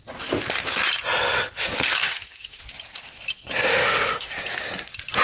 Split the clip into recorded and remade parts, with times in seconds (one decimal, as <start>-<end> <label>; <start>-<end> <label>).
0.0-2.0 recorded; 2.0-2.6 remade; 2.6-3.7 recorded; 3.7-4.3 remade; 4.3-5.2 recorded